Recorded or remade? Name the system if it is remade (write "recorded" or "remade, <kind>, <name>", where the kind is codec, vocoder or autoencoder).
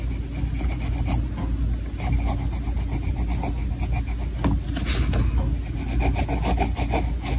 recorded